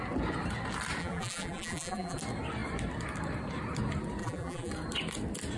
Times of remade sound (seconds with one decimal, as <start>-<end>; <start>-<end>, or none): 1.0-2.2; 4.2-4.7